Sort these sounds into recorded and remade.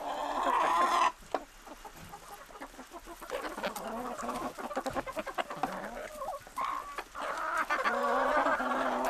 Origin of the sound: recorded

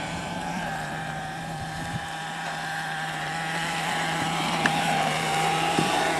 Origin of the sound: remade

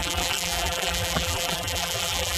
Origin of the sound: remade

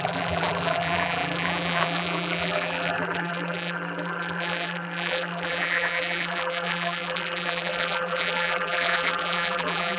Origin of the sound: remade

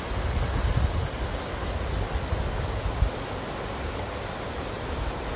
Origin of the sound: recorded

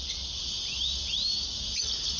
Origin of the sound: recorded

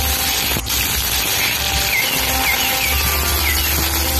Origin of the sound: recorded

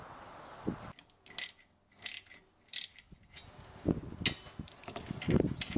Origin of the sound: recorded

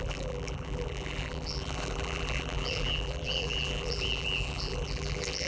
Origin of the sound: remade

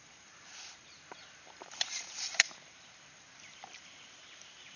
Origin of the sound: remade